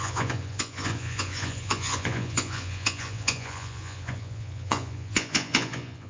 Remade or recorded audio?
remade